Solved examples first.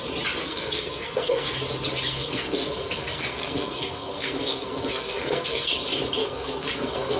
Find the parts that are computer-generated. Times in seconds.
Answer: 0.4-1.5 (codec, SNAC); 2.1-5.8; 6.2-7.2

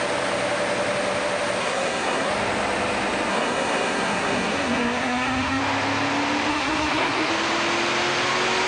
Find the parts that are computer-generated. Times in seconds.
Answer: 1.6-2.3 (codec, SNAC); 3.3-5.6; 6.5-7.3

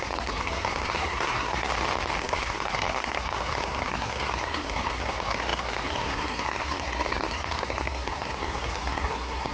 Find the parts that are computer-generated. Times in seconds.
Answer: 0.0-1.7 (codec, SNAC); 2.2-9.5

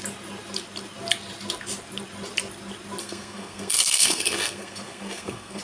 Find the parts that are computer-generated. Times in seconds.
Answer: 3.0-5.6 (codec, SNAC)

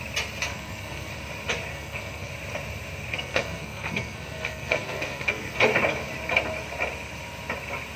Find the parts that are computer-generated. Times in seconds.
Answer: 0.5-1.1 (codec, SNAC); 1.7-2.3; 3.1-5.6

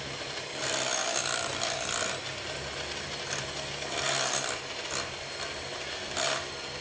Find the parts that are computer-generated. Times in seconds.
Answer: none